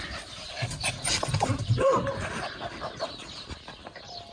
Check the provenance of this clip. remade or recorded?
remade